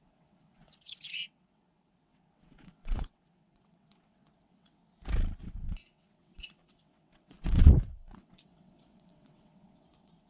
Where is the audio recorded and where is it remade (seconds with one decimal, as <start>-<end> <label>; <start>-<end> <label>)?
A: 0.0-4.8 remade; 4.8-5.4 recorded; 5.4-10.3 remade